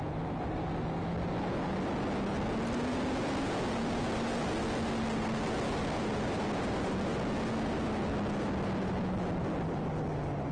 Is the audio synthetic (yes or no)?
no